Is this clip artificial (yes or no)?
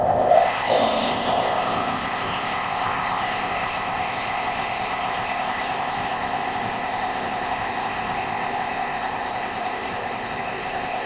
yes